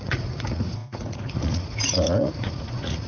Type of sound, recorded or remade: remade